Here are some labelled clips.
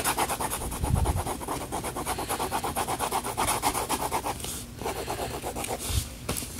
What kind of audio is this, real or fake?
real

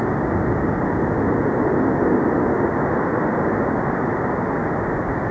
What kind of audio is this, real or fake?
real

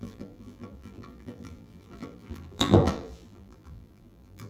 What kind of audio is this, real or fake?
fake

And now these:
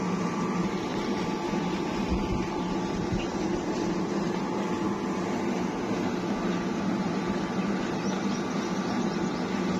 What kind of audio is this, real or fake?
real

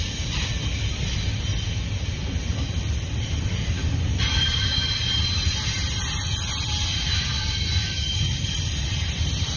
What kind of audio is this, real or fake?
fake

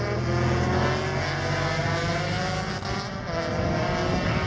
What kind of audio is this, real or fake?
real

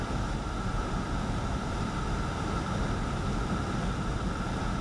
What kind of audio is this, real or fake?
real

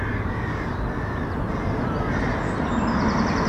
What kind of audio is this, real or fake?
real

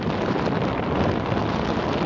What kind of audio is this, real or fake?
fake